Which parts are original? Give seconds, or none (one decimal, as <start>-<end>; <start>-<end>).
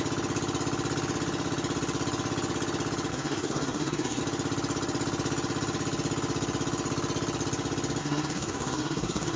0.0-3.1; 4.2-8.0